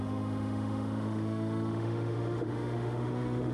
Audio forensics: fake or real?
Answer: fake